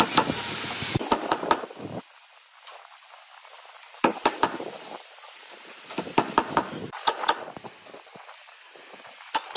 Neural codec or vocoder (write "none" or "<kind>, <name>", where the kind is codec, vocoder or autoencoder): none